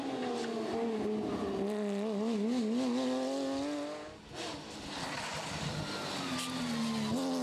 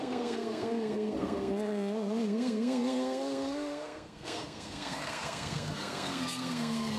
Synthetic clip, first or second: second